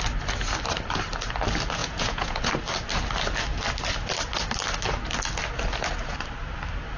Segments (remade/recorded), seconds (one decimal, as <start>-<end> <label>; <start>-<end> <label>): 0.0-1.8 recorded; 1.8-2.5 remade; 2.5-7.0 recorded